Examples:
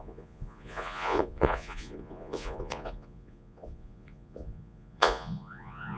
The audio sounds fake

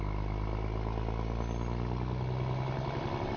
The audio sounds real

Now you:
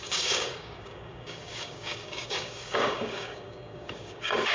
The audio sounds fake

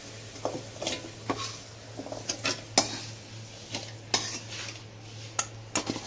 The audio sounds real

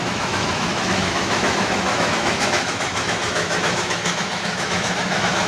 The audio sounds fake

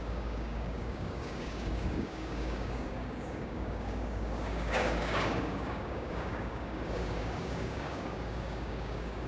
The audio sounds fake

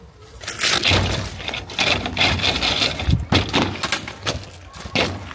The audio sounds real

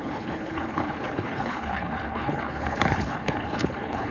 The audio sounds fake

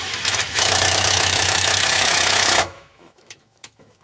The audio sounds fake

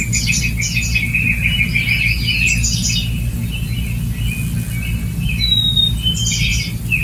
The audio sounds real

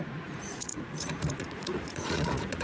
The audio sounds fake